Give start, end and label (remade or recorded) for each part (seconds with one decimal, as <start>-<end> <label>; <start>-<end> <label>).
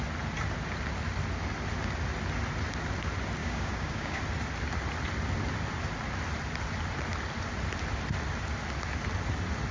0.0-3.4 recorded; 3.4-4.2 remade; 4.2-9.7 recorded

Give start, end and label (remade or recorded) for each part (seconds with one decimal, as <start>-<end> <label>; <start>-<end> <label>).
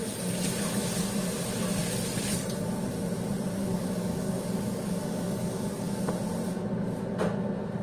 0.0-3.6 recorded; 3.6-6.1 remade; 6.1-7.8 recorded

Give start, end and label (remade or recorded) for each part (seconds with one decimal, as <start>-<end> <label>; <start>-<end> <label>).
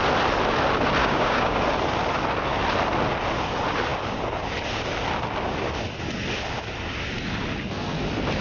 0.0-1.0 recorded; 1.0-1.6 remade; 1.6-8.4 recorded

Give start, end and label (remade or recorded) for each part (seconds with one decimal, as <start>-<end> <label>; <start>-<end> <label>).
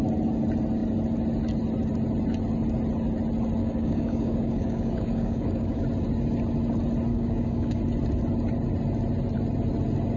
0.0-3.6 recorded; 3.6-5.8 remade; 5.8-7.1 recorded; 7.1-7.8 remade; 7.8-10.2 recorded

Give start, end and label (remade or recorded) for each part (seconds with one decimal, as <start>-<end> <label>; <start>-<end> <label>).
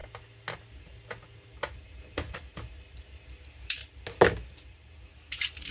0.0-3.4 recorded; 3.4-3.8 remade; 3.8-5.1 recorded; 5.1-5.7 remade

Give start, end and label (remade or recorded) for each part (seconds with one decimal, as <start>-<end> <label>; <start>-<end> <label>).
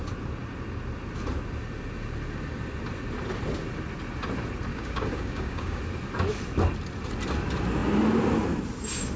0.0-4.7 recorded; 4.7-5.8 remade; 5.8-9.2 recorded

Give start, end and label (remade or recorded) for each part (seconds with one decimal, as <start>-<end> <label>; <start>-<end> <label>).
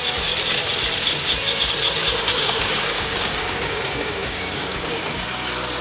0.0-2.0 recorded; 2.0-5.0 remade; 5.0-5.8 recorded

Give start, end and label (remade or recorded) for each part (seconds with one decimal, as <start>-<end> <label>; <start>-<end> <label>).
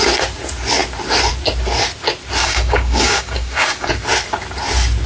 0.0-2.4 recorded; 2.4-3.9 remade; 3.9-5.1 recorded